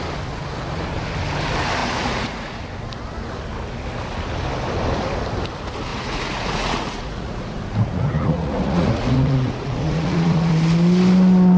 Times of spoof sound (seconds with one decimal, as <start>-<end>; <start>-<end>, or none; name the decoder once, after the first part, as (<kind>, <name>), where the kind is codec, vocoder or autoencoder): 1.8-2.6 (vocoder, Vocos); 5.9-10.5